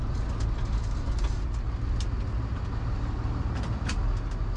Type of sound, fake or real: real